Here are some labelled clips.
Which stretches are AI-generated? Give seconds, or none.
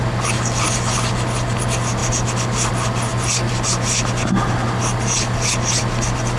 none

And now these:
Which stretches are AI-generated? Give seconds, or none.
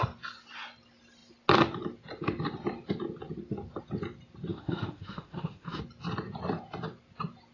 4.5-5.8 (autoencoder, DAC-VAE)